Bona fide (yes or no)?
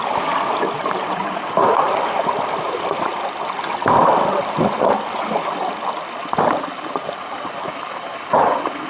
yes